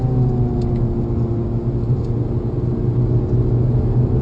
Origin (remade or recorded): recorded